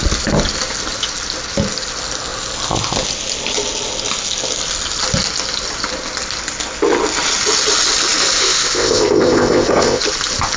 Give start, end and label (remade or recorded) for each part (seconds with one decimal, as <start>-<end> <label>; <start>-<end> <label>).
0.0-8.4 recorded; 8.4-10.0 remade; 10.0-10.6 recorded